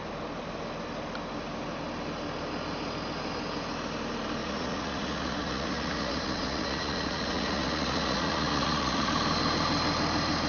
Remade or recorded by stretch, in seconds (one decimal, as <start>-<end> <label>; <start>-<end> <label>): 0.0-4.4 recorded; 4.4-9.1 remade; 9.1-10.5 recorded